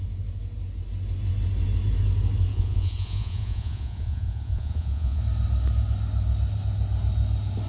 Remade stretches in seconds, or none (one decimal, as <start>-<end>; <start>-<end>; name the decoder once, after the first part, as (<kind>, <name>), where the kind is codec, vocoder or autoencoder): 2.5-5.2 (vocoder, Vocos)